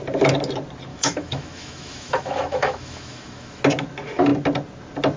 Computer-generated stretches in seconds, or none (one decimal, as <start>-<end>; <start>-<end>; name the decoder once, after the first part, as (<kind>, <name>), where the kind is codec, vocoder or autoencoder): 0.9-3.6 (autoencoder, DAC-VAE)